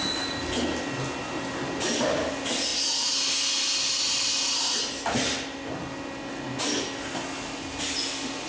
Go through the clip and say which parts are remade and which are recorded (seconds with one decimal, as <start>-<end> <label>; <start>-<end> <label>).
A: 0.0-8.5 recorded